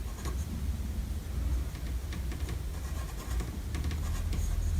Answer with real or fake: real